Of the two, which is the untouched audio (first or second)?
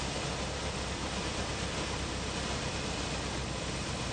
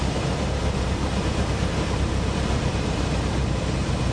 first